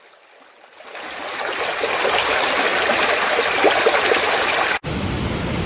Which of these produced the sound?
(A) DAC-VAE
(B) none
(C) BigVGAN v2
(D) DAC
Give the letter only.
B